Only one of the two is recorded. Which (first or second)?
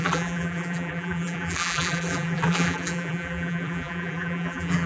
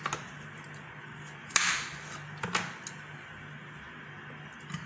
second